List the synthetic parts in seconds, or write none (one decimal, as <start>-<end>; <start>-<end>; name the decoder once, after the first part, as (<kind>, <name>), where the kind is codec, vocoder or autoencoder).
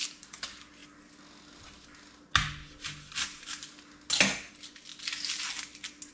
none